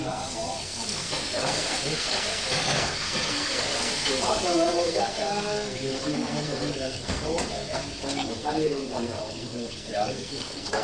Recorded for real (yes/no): no